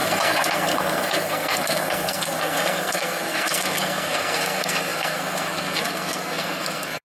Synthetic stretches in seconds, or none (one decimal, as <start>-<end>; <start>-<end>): 0.0-7.0